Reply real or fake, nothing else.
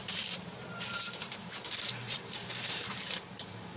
fake